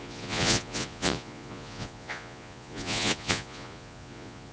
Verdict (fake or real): fake